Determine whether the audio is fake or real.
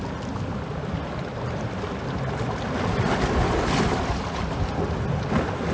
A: real